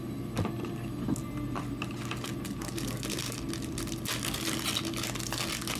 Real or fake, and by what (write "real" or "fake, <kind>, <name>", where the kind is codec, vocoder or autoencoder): real